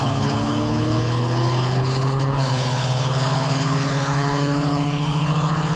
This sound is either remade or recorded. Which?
remade